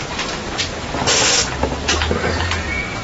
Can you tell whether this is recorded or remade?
recorded